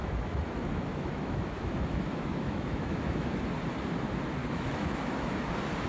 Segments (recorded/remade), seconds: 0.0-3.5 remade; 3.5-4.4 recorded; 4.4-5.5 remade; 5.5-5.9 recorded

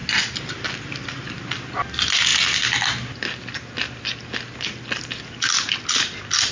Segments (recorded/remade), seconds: 0.0-6.5 recorded

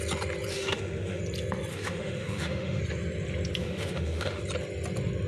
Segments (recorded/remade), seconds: 0.0-0.5 recorded; 0.5-1.2 remade; 1.2-1.7 recorded; 1.7-2.8 remade; 2.8-3.6 recorded; 3.6-4.4 remade; 4.4-5.3 recorded

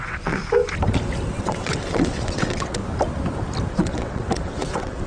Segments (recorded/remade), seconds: 0.0-0.4 remade; 0.4-1.4 recorded; 1.4-2.8 remade; 2.8-3.7 recorded; 3.7-5.1 remade

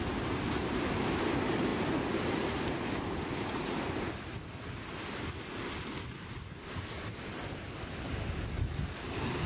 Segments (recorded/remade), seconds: 0.0-9.5 recorded

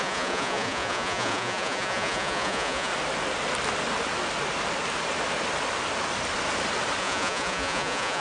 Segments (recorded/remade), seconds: 0.0-2.9 remade; 2.9-7.0 recorded; 7.0-8.2 remade

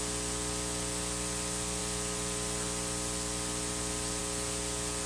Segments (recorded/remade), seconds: 0.0-5.1 recorded